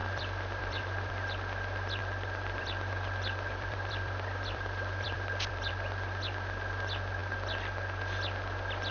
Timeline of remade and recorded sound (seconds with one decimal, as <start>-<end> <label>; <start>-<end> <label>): 0.0-1.1 remade; 1.1-2.0 recorded; 2.0-5.7 remade; 5.7-8.9 recorded

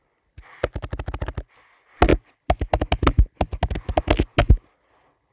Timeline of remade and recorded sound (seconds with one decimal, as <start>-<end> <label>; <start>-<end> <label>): 0.0-5.3 recorded

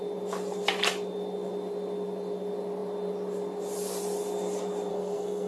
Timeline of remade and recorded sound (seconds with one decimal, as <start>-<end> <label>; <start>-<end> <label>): 0.0-4.9 recorded; 4.9-5.5 remade

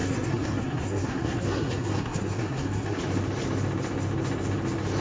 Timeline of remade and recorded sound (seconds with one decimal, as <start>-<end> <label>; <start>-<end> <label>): 0.0-3.0 remade; 3.0-5.0 recorded

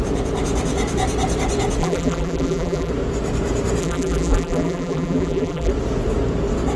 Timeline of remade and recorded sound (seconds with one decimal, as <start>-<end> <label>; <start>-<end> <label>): 0.0-1.8 recorded; 1.8-2.9 remade; 2.9-3.8 recorded; 3.8-5.7 remade; 5.7-6.8 recorded

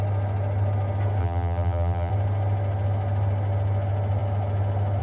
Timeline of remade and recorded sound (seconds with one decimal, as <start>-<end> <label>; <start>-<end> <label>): 0.0-1.2 recorded; 1.2-2.1 remade; 2.1-5.0 recorded

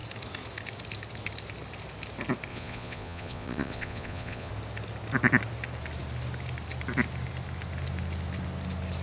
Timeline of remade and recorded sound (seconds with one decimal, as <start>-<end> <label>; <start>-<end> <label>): 0.0-2.5 recorded; 2.5-4.5 remade; 4.5-9.0 recorded

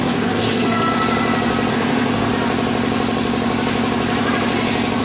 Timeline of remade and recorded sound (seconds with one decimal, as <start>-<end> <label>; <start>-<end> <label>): 0.0-0.9 remade; 0.9-1.7 recorded; 1.7-2.3 remade; 2.3-5.0 recorded